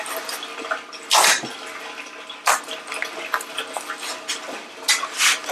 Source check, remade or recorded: recorded